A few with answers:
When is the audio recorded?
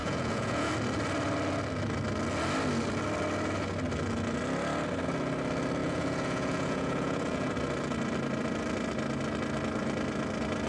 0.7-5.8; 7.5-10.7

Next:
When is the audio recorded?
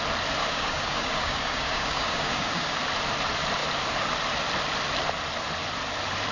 0.0-0.4; 2.8-6.3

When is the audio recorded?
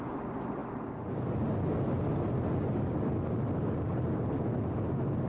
0.0-5.3